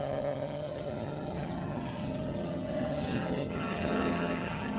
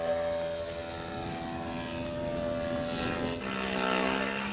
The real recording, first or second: second